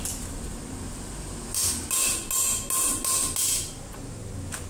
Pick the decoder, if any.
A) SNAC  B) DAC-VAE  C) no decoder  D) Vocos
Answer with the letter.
C